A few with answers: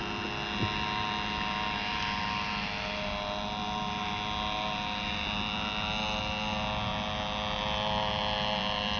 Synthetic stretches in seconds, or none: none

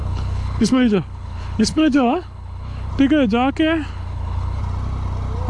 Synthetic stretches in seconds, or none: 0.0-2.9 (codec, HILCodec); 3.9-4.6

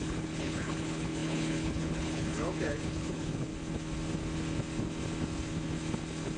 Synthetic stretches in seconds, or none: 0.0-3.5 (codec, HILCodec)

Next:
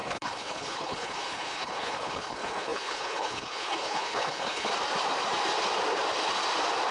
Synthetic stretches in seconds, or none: 0.0-4.7 (codec, HILCodec)

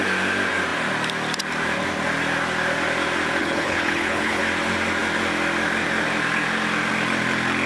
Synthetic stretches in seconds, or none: 3.4-4.4 (codec, HILCodec)

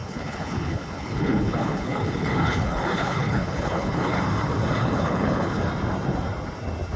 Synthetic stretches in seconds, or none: 0.0-4.2 (codec, HILCodec); 4.8-5.6